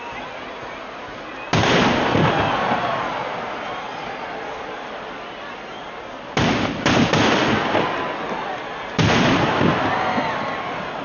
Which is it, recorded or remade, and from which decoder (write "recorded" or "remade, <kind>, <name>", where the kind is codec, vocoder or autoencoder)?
recorded